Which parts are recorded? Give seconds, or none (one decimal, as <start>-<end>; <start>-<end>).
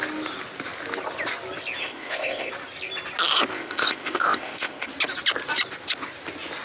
0.0-1.8; 2.5-3.5; 4.9-6.6